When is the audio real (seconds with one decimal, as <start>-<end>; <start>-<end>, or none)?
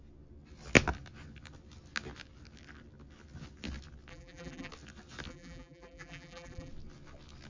0.0-4.1; 4.7-5.3; 6.7-7.5